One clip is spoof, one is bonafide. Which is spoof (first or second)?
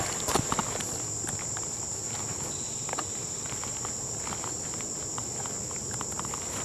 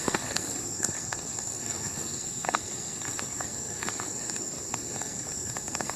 second